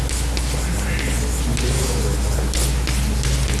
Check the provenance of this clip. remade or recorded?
recorded